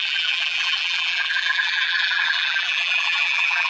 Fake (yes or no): yes